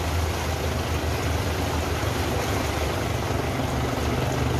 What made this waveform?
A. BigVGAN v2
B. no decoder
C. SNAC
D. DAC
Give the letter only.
B